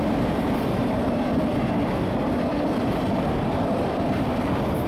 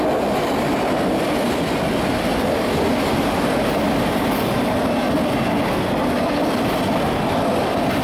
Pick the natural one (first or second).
second